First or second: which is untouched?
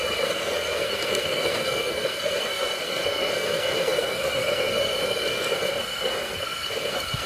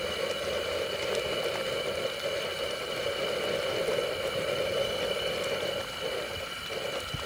second